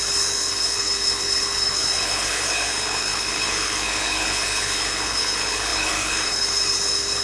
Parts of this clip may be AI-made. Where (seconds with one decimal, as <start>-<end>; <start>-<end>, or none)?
0.0-7.2